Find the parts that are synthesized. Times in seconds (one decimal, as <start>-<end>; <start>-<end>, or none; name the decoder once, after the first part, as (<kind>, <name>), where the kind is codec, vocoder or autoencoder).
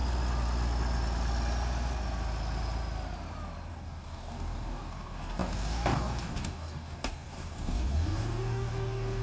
3.7-9.2 (codec, DAC)